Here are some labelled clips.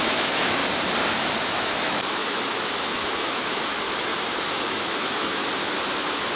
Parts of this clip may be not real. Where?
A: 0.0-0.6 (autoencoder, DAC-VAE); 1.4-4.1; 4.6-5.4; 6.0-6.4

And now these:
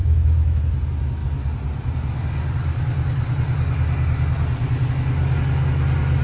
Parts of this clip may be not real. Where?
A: 0.0-0.6 (autoencoder, DAC-VAE)

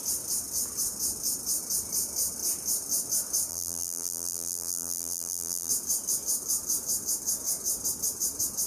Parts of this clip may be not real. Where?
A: 3.5-5.7 (vocoder, BigVGAN v2)

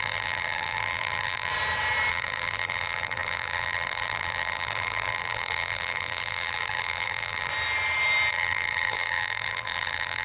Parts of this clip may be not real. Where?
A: 0.0-1.5 (vocoder, BigVGAN v2); 2.1-7.5; 8.3-10.2

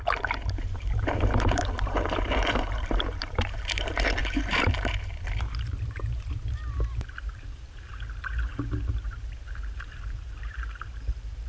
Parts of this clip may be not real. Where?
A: 0.0-11.5 (vocoder, BigVGAN v2)

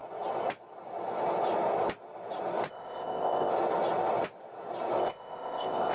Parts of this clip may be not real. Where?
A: 2.7-3.5 (codec, ZipCodec); 5.0-5.9